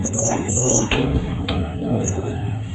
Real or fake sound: fake